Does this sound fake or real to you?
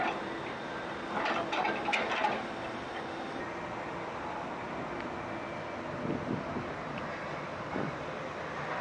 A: real